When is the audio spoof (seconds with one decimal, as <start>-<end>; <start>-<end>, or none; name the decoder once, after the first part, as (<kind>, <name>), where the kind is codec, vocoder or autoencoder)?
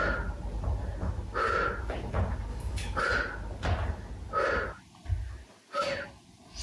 2.5-3.0 (codec, DAC)